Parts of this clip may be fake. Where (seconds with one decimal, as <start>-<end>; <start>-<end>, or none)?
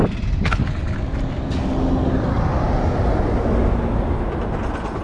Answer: none